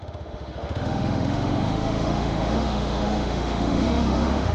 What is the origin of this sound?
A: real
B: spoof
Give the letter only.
B